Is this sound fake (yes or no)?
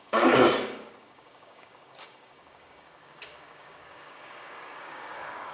yes